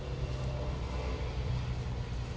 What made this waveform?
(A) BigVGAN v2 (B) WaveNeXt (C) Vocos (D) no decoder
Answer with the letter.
D